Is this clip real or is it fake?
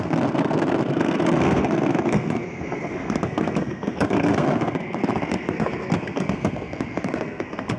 fake